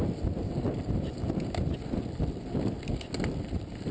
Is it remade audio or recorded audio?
recorded